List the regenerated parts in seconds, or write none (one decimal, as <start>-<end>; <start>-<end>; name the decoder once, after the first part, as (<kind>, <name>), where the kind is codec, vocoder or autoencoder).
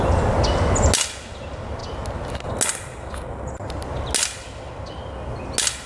none